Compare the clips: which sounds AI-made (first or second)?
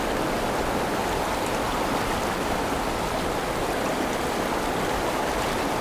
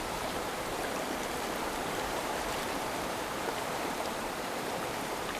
second